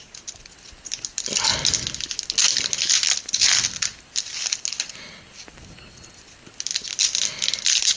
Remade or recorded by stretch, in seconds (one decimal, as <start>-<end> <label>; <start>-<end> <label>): 0.0-8.0 recorded